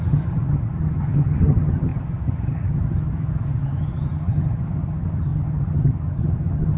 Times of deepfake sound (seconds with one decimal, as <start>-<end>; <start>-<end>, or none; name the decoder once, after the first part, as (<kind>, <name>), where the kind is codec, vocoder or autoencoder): 0.0-6.8 (vocoder, HiFi-GAN)